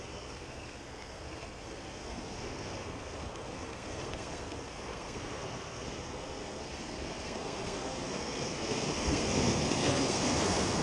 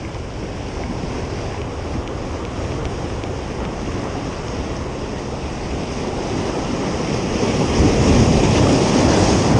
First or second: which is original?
second